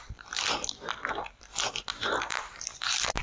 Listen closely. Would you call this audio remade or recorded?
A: recorded